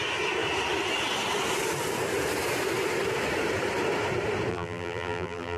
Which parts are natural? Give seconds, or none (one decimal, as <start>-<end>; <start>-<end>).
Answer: 0.0-4.5